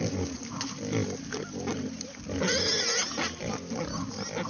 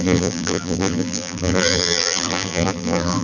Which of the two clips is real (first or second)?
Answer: first